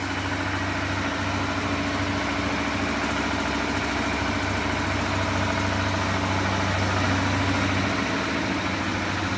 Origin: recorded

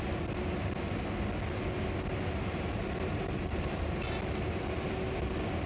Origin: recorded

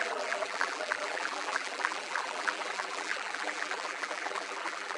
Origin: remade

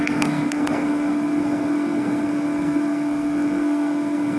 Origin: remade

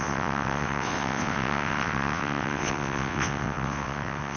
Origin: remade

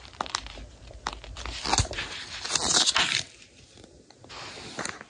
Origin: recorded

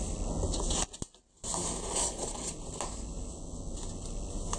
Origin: recorded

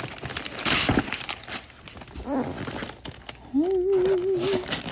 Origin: recorded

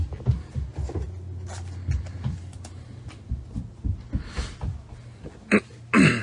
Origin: recorded